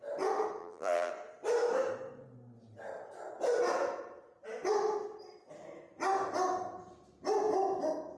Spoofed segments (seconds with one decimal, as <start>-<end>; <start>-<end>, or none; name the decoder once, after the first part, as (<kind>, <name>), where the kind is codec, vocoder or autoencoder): 0.6-1.1 (vocoder, BigVGAN v2)